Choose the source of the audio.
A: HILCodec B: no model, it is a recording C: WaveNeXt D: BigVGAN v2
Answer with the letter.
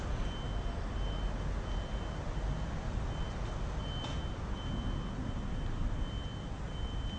B